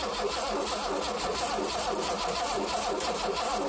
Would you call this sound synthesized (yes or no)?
no